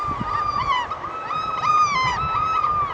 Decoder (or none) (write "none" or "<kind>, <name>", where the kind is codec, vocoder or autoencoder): none